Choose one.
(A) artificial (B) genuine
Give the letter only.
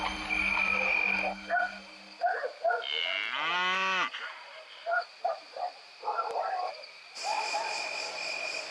B